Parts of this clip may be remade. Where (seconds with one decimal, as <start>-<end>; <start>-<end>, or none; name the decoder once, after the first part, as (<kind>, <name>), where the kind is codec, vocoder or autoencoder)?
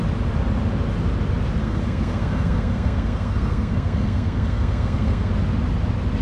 1.6-5.3 (codec, SNAC)